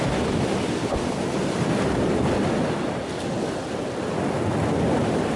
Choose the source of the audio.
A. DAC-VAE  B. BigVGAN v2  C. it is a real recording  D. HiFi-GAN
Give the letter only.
C